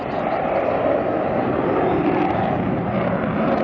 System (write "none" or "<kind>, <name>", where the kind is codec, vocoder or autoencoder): none